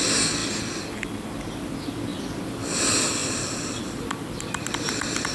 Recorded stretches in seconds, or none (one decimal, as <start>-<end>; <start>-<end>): none